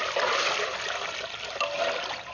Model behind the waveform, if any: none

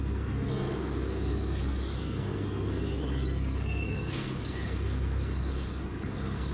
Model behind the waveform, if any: codec, SNAC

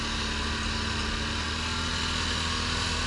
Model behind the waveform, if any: none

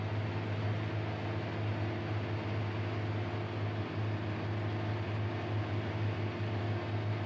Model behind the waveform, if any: none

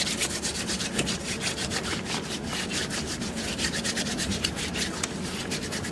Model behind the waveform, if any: none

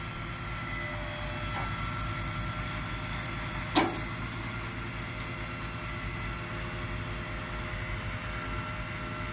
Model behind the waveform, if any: none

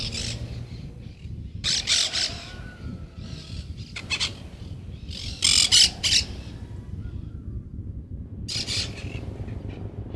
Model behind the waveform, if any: none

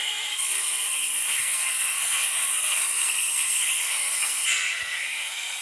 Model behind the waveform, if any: codec, SNAC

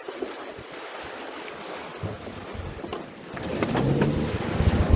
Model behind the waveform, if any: none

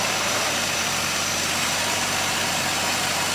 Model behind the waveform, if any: vocoder, BigVGAN v2